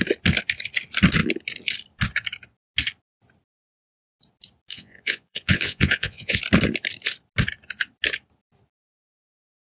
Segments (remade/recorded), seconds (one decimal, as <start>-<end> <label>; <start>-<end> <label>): 0.0-4.7 recorded; 4.7-6.4 remade; 6.4-9.7 recorded